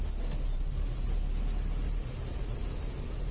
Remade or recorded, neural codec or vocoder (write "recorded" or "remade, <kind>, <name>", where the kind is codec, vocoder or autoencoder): recorded